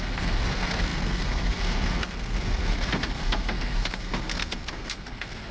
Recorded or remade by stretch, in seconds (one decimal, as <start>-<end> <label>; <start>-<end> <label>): 0.0-5.5 remade